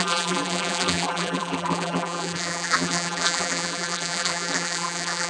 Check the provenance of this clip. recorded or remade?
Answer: remade